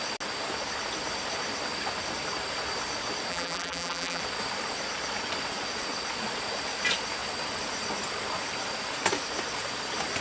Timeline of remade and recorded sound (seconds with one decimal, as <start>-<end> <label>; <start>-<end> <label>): 0.0-3.3 recorded; 3.3-4.2 remade; 4.2-10.2 recorded